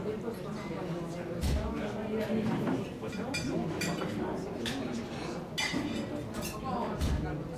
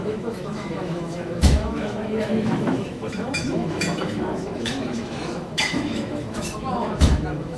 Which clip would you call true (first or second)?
first